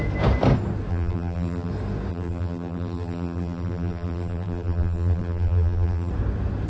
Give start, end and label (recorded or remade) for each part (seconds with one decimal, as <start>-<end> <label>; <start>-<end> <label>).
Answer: 0.0-0.9 recorded; 0.9-1.7 remade; 1.7-2.1 recorded; 2.1-6.1 remade; 6.1-6.7 recorded